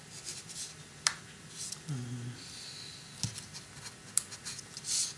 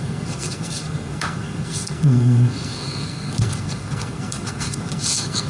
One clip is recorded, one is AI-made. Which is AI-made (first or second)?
second